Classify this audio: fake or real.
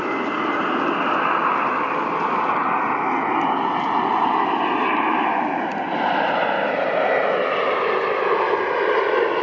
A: real